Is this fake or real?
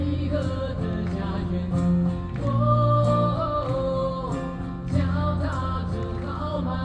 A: real